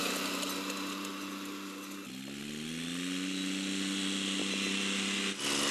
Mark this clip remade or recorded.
recorded